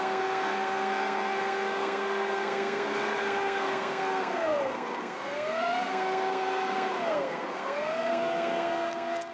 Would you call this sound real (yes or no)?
no